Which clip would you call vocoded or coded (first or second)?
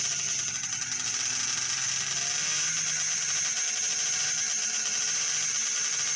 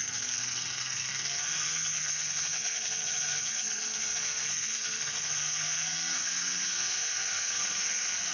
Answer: second